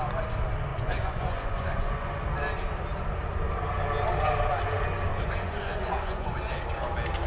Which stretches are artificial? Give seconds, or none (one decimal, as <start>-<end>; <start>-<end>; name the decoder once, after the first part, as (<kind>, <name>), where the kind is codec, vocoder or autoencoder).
0.7-2.1 (vocoder, Vocos); 5.1-6.5